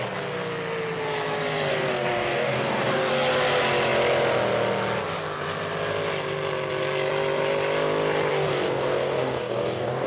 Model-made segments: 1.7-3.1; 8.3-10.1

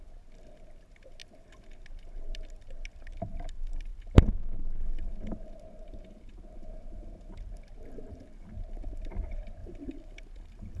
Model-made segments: 9.6-10.8